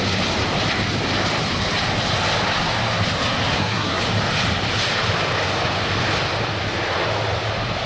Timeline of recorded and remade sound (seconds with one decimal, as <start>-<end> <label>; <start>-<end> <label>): 0.0-3.5 recorded; 3.5-4.0 remade; 4.0-7.9 recorded